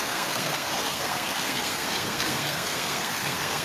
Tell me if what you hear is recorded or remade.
remade